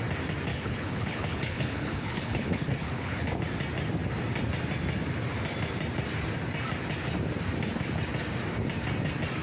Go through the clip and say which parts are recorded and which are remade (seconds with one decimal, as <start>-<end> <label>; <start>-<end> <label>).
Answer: 0.0-0.5 recorded; 0.5-3.4 remade; 3.4-9.4 recorded